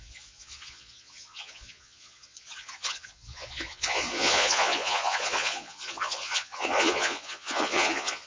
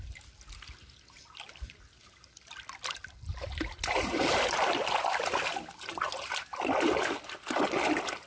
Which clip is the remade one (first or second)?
first